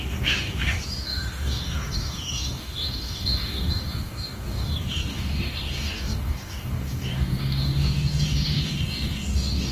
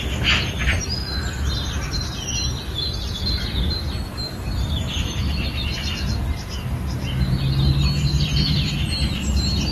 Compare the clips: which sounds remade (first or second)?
first